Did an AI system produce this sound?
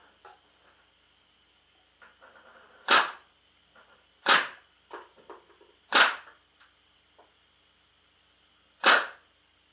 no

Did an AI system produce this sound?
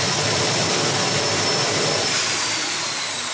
no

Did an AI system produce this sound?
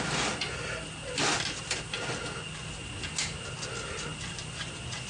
no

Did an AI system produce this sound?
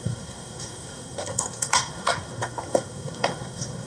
yes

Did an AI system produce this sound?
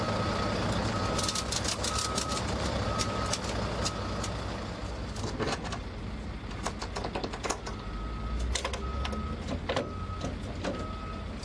no